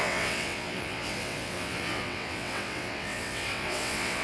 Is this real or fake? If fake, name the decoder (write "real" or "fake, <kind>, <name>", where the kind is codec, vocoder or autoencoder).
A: fake, vocoder, WaveNeXt